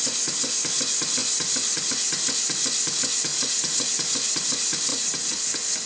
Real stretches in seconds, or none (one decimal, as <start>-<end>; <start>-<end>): 0.0-3.3; 3.9-4.9; 5.4-5.9